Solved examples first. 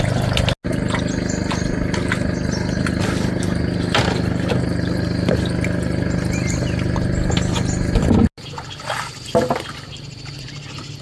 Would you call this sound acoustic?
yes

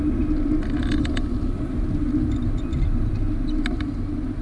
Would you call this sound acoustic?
yes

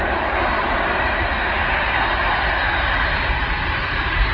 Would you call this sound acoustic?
yes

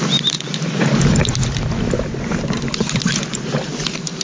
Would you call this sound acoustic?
yes